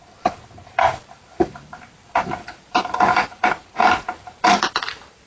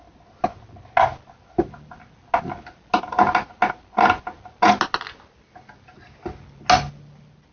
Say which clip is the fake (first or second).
first